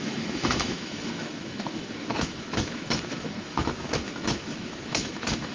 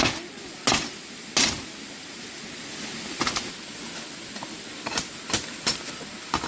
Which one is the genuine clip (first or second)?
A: second